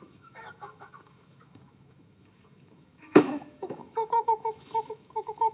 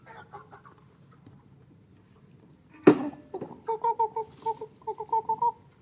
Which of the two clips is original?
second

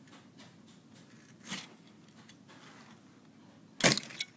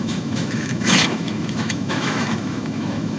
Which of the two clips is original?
first